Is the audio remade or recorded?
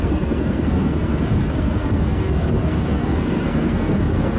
remade